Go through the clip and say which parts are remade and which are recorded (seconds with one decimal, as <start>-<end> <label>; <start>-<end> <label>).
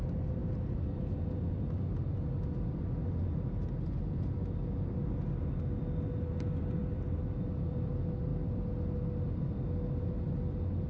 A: 0.0-6.8 recorded; 6.8-7.7 remade; 7.7-10.9 recorded